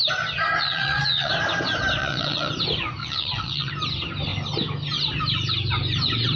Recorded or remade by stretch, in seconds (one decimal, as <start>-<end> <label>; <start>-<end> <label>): 0.0-0.6 recorded; 0.6-1.3 remade; 1.3-2.0 recorded; 2.0-2.5 remade; 2.5-3.0 recorded; 3.0-3.7 remade; 3.7-6.4 recorded